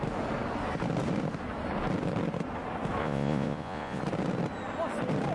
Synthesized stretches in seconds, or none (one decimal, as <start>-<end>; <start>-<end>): 3.0-4.0